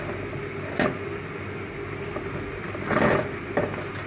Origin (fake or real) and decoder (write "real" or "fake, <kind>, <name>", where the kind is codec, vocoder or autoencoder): real